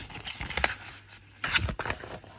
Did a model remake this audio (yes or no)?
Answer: no